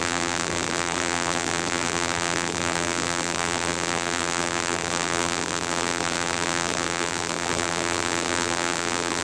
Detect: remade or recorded remade